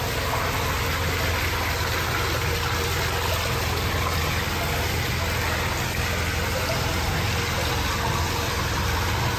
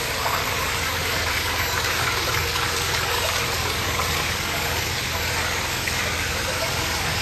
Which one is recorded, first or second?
first